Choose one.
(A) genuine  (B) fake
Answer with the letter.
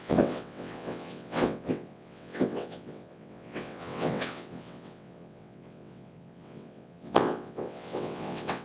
B